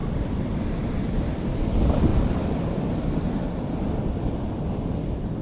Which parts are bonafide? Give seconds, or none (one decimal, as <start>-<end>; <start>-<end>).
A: 1.5-2.1